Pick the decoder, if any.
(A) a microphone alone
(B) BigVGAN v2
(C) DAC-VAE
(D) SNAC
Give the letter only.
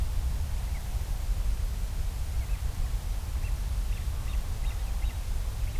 A